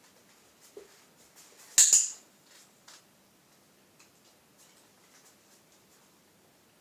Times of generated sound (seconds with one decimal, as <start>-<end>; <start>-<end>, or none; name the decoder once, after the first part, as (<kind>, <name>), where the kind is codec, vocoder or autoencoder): 1.8-3.0 (vocoder, BigVGAN v2)